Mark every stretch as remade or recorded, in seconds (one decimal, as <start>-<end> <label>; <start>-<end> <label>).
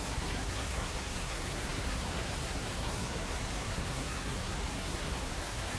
0.0-5.8 remade